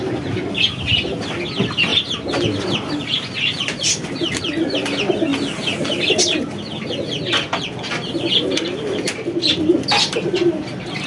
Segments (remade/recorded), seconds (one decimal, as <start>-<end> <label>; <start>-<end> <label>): 0.0-5.3 remade; 5.3-6.9 recorded; 6.9-11.1 remade

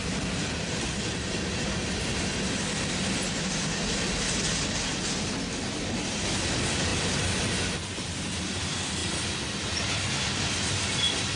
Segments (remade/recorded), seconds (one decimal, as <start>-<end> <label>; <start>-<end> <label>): 0.0-11.4 recorded